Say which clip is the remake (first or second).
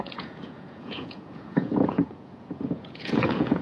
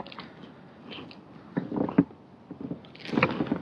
first